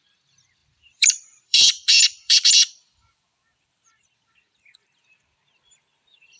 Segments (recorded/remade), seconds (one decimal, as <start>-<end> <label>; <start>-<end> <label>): 0.0-6.4 remade